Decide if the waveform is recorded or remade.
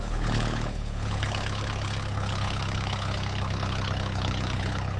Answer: remade